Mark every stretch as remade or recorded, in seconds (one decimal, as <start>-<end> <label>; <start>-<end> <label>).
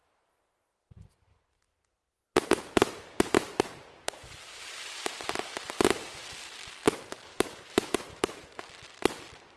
0.0-5.2 remade; 5.2-7.2 recorded; 7.2-8.6 remade; 8.6-9.6 recorded